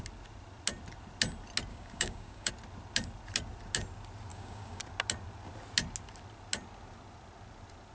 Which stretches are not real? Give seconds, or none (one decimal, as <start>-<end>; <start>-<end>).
1.7-2.5; 4.3-4.8